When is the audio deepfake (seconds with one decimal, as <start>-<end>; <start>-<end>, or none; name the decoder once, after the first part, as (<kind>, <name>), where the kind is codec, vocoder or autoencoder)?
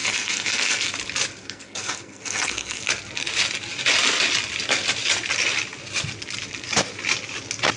0.0-0.9 (codec, SNAC); 1.4-2.8